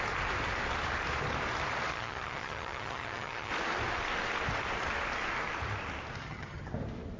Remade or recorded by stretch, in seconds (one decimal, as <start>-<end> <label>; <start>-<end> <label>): 0.0-1.9 recorded; 1.9-3.5 remade; 3.5-6.2 recorded; 6.2-6.7 remade; 6.7-7.2 recorded